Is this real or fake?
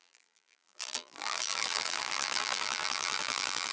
fake